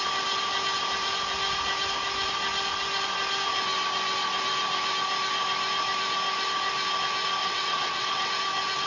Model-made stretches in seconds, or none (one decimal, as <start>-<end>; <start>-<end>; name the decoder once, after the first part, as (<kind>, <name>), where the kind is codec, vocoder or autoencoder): 7.4-8.3 (vocoder, WaveNeXt)